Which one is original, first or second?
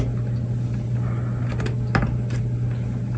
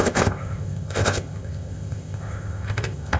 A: first